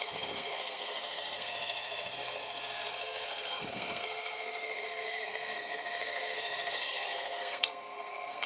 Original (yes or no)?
no